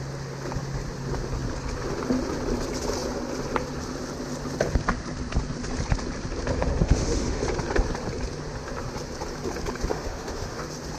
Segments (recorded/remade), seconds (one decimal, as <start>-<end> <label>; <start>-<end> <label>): 0.0-6.8 recorded; 6.8-7.4 remade; 7.4-9.9 recorded; 9.9-10.6 remade; 10.6-11.0 recorded